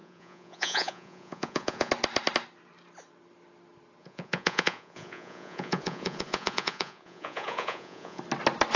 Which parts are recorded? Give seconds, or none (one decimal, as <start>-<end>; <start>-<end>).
1.9-4.0; 8.2-8.8